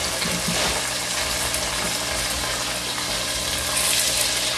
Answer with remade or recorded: recorded